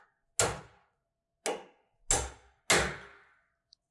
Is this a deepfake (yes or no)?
no